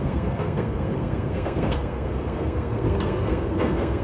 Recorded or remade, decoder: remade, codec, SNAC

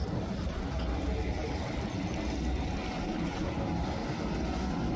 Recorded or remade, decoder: recorded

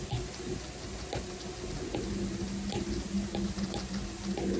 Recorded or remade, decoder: recorded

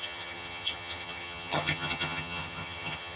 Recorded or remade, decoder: remade, vocoder, HiFi-GAN